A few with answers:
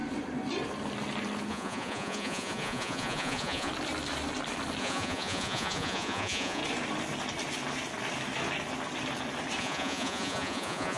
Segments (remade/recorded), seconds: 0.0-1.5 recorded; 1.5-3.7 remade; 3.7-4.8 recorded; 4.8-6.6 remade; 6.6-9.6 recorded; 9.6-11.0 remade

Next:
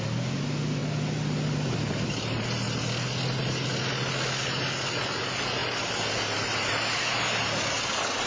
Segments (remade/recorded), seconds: 0.0-8.3 recorded

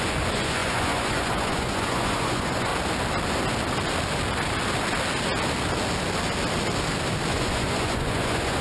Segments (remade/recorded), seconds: 0.0-2.7 remade; 2.7-7.3 recorded; 7.3-8.6 remade

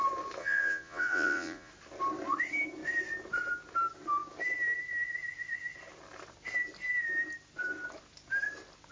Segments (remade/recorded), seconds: 0.0-0.4 recorded; 0.4-1.7 remade; 1.7-8.9 recorded

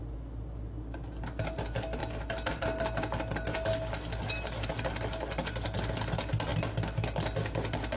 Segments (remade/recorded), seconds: 0.0-8.0 recorded

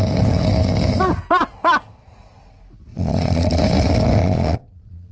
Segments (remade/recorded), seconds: 0.0-2.9 recorded; 2.9-3.6 remade; 3.6-4.2 recorded; 4.2-5.1 remade

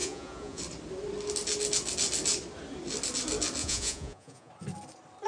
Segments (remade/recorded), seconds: 0.0-0.6 remade; 0.6-3.6 recorded; 3.6-4.5 remade; 4.5-5.3 recorded

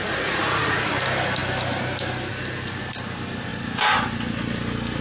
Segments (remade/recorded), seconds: 0.0-0.9 remade; 0.9-5.0 recorded